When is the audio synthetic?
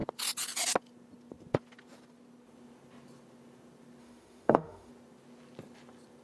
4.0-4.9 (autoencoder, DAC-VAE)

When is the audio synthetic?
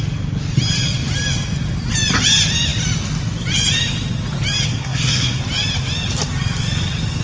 4.7-5.4 (codec, SNAC)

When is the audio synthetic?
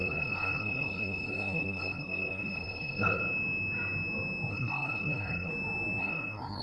0.0-3.2 (codec, SNAC); 4.5-5.5; 6.0-6.6